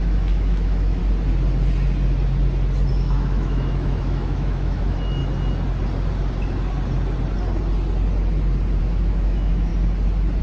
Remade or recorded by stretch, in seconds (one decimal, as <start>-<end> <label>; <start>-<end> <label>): 0.0-1.0 remade; 1.0-2.9 recorded; 2.9-5.2 remade; 5.2-8.8 recorded; 8.8-9.7 remade; 9.7-10.4 recorded